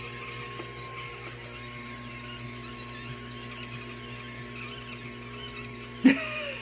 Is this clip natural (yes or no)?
yes